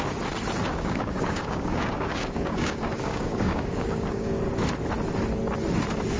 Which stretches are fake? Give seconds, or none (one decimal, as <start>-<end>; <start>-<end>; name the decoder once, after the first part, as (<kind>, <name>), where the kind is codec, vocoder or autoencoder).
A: 0.7-4.4 (codec, DAC)